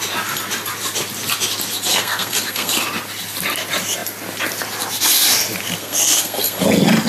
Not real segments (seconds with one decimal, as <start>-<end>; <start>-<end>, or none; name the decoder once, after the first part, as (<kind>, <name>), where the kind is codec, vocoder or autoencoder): 1.9-2.7 (codec, SNAC); 5.8-6.6